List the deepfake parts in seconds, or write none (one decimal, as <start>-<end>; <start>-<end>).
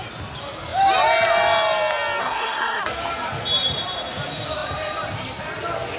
2.2-2.8